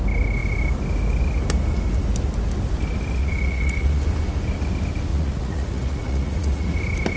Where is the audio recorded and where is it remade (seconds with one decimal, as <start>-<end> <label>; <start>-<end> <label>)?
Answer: 0.0-3.2 recorded; 3.2-4.0 remade; 4.0-5.1 recorded; 5.1-6.8 remade; 6.8-7.2 recorded